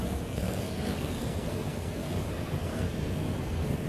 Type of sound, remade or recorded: remade